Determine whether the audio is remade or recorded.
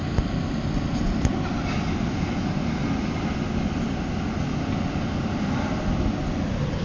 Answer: recorded